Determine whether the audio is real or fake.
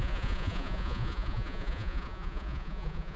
fake